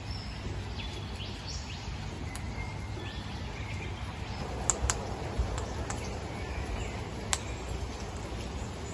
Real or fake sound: real